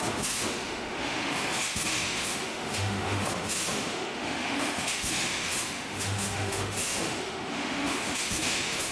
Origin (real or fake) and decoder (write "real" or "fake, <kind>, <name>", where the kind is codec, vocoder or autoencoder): fake, autoencoder, DAC-VAE